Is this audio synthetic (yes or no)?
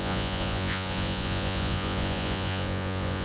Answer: yes